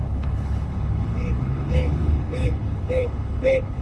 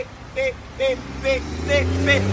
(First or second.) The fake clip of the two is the first